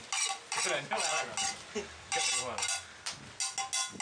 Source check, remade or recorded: recorded